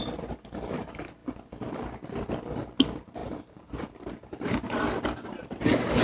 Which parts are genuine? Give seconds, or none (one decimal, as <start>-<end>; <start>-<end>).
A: 0.0-3.2; 4.8-6.0